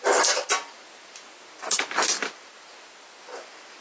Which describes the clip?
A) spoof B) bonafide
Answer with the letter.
B